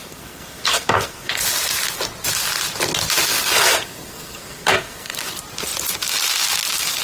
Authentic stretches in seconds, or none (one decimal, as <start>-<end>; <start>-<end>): 1.4-3.3; 5.3-7.0